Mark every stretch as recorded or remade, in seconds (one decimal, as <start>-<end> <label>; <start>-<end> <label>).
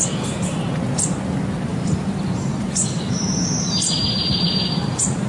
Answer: 0.0-1.7 recorded; 1.7-5.3 remade